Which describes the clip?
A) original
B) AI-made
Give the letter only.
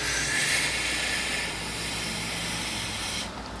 A